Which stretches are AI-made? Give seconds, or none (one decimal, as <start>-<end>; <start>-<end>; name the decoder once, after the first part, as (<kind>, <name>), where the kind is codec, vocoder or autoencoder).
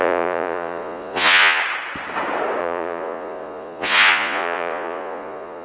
0.0-1.6 (vocoder, Vocos); 2.6-5.6